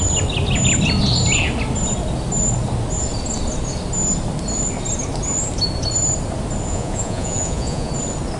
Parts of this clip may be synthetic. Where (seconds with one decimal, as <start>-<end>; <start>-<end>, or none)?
6.7-7.9